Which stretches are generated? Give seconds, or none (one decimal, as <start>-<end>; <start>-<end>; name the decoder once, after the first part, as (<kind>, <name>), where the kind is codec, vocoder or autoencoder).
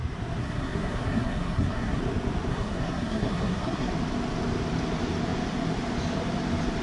0.4-2.0 (codec, SNAC); 2.5-3.9